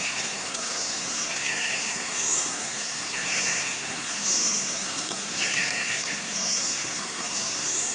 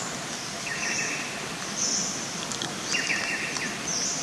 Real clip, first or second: second